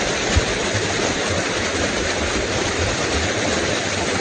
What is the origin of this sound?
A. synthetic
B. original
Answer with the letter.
B